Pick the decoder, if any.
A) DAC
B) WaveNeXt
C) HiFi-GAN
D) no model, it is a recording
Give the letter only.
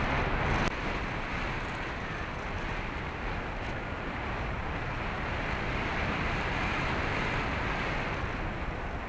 D